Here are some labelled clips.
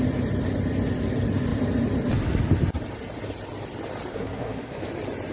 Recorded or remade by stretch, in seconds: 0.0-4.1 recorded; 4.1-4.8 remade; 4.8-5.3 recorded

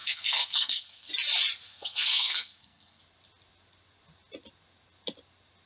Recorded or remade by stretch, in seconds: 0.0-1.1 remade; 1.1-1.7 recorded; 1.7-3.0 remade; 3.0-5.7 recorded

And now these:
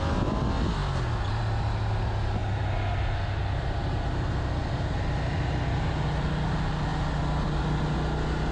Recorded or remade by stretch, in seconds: 0.0-8.5 recorded

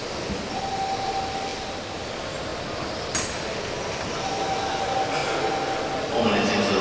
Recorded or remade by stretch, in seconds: 0.0-6.8 recorded

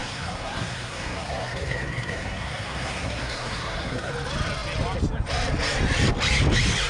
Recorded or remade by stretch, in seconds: 0.0-4.1 remade; 4.1-6.9 recorded